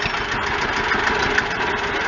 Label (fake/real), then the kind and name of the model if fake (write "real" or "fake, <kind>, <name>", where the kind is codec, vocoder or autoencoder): real